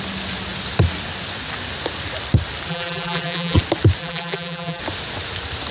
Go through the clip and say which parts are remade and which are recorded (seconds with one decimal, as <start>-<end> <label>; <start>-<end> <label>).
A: 0.0-2.7 recorded; 2.7-3.6 remade; 3.6-4.0 recorded; 4.0-4.8 remade; 4.8-5.7 recorded